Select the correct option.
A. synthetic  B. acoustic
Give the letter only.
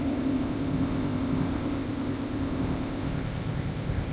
A